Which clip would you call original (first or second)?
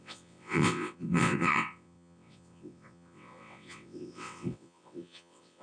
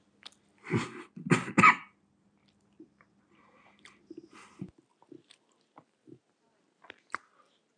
second